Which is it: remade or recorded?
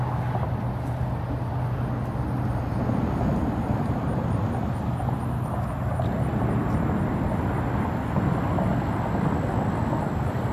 recorded